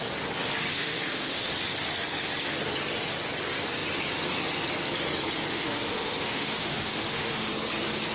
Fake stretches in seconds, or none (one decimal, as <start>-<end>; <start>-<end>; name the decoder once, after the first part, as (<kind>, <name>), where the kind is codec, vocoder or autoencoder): 0.7-1.5 (autoencoder, DAC-VAE); 5.5-7.5